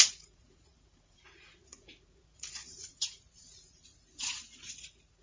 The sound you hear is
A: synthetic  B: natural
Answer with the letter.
A